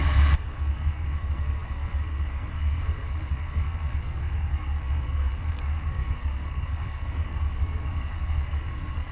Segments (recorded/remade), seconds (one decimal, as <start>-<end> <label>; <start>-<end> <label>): 0.0-9.1 remade